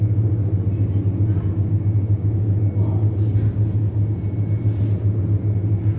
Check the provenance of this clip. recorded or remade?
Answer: recorded